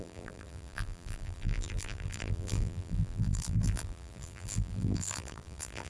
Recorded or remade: remade